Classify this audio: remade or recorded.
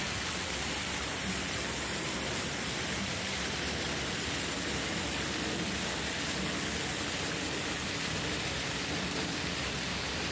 recorded